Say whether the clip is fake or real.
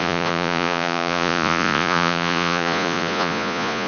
fake